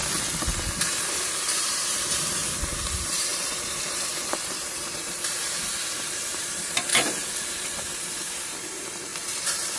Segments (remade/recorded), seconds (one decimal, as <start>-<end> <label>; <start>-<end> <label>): 0.0-1.3 recorded; 1.3-6.9 remade; 6.9-7.5 recorded; 7.5-9.8 remade